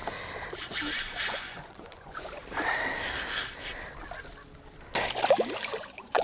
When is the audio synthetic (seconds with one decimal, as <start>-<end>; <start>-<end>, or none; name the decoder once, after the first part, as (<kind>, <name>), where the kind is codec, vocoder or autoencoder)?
1.2-2.4 (vocoder, Vocos); 5.8-6.2